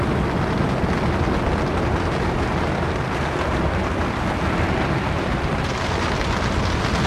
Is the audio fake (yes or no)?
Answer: no